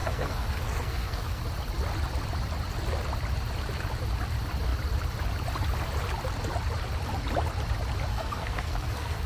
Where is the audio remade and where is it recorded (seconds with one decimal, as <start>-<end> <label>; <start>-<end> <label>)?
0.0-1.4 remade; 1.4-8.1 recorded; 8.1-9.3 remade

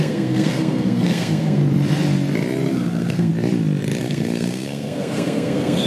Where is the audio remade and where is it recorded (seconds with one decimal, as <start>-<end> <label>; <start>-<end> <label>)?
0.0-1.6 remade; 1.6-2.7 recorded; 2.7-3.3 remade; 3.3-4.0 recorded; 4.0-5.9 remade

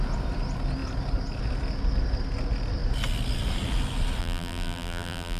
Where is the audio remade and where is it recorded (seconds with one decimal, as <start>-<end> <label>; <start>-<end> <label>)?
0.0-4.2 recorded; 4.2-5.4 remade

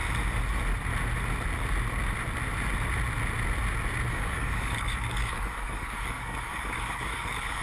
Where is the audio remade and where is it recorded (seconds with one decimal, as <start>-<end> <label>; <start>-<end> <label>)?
0.0-4.1 recorded; 4.1-7.6 remade

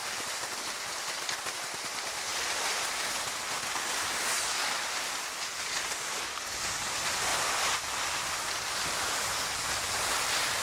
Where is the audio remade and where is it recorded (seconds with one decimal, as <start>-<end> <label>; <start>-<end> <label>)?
0.0-10.6 recorded

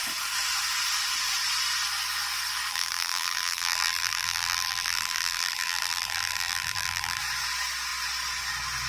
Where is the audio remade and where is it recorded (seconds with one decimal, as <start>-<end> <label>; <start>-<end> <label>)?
0.0-2.7 recorded; 2.7-7.2 remade; 7.2-8.9 recorded

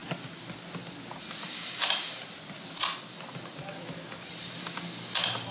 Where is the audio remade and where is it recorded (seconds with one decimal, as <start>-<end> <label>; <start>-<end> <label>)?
0.0-3.7 recorded; 3.7-4.2 remade; 4.2-5.5 recorded